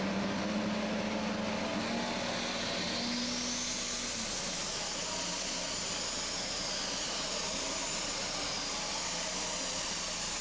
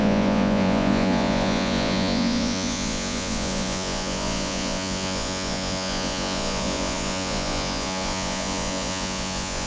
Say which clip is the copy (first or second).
second